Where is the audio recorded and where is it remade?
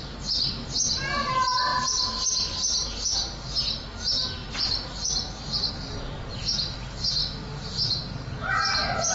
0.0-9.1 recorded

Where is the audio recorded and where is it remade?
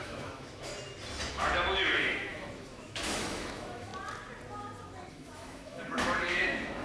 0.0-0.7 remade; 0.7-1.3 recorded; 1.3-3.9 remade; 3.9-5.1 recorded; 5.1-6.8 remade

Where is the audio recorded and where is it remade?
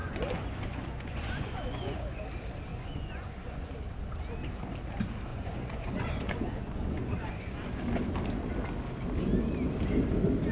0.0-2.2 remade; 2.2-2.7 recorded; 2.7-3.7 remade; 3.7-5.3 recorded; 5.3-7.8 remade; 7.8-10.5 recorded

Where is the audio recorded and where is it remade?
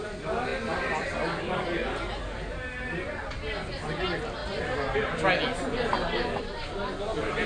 0.0-7.5 recorded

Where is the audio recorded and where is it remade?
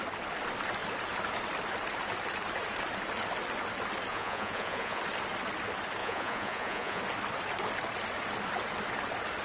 0.0-4.1 recorded; 4.1-5.0 remade; 5.0-6.0 recorded; 6.0-7.0 remade; 7.0-9.4 recorded